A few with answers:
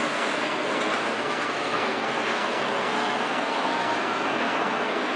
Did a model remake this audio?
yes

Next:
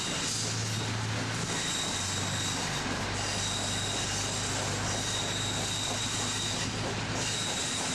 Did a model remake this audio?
no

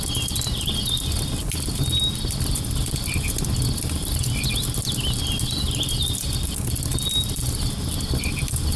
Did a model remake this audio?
no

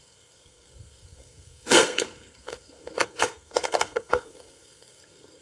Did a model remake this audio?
yes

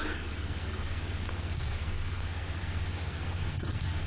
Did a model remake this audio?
yes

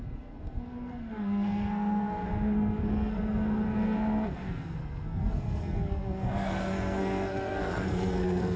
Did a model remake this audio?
yes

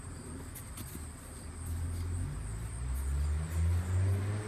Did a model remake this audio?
no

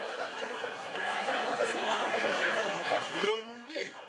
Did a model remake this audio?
yes